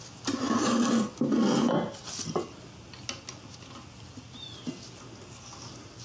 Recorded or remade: recorded